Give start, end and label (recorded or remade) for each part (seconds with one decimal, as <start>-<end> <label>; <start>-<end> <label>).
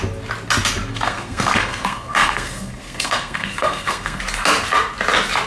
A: 0.0-0.9 recorded; 0.9-4.2 remade; 4.2-5.5 recorded